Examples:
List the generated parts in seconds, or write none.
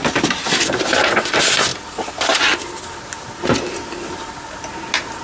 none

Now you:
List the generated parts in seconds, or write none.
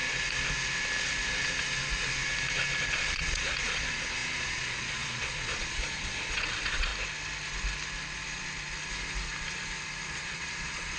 2.8-6.9; 10.1-11.0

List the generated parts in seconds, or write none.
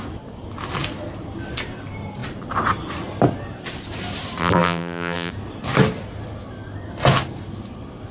4.4-5.3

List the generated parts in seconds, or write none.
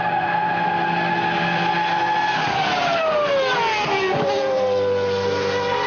none